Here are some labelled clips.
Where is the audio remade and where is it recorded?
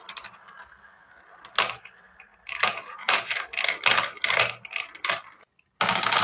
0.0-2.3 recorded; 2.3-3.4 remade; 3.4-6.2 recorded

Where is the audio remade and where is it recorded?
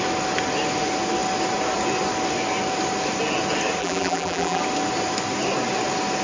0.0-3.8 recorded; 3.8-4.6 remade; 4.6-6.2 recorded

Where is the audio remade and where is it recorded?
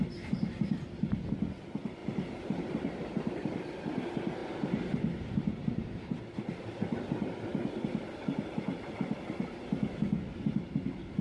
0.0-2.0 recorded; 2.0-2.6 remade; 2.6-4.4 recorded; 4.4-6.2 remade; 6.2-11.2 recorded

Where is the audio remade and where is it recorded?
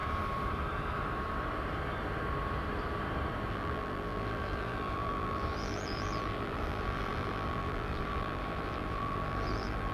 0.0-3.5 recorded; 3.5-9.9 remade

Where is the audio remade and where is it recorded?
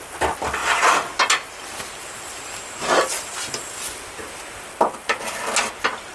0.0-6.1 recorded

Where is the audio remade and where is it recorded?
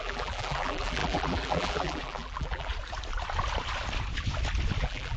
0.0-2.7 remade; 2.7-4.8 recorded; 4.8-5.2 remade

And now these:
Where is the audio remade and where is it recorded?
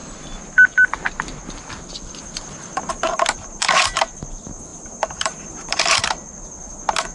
0.0-4.7 recorded; 4.7-6.0 remade; 6.0-7.1 recorded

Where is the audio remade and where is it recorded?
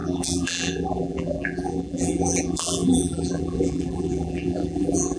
0.0-5.2 remade